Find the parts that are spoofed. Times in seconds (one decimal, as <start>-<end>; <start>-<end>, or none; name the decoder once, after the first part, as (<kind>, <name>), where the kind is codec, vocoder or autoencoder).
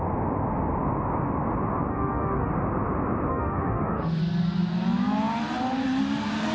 1.9-2.5 (autoencoder, DAC-VAE); 3.3-4.2